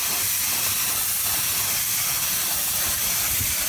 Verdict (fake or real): real